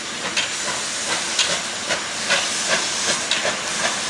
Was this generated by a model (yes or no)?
no